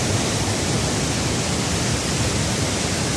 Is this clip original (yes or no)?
yes